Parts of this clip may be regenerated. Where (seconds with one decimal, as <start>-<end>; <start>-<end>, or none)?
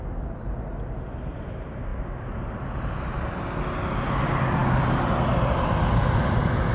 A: none